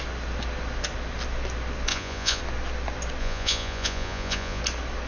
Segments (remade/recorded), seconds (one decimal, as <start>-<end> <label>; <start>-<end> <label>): 0.0-1.9 recorded; 1.9-2.4 remade; 2.4-3.2 recorded; 3.2-4.6 remade; 4.6-5.1 recorded